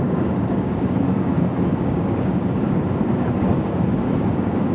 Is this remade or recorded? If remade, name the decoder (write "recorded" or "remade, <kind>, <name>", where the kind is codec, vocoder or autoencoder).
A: remade, codec, DAC